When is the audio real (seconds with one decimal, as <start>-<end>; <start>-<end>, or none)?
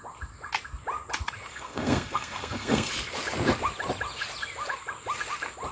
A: 0.0-1.5; 2.9-5.7